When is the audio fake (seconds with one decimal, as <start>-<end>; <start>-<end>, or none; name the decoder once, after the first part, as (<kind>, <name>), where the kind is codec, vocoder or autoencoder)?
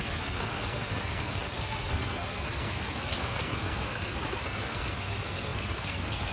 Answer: 0.0-6.3 (codec, SNAC)